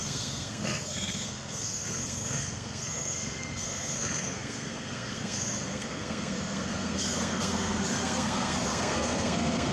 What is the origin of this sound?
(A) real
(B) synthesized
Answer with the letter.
B